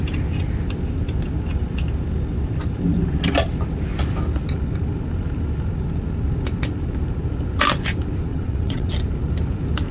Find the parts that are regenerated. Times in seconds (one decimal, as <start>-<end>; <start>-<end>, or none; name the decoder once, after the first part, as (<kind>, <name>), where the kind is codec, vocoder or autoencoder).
8.3-8.9 (vocoder, WaveNeXt)